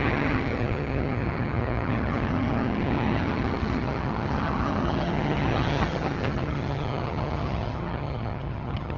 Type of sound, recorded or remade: remade